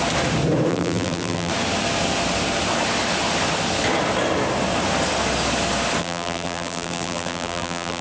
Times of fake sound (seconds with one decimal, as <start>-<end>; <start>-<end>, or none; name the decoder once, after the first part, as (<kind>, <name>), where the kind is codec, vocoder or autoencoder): 0.7-1.5 (vocoder, BigVGAN v2); 6.0-8.0